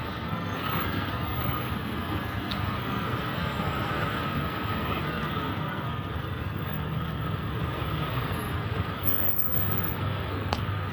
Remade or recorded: remade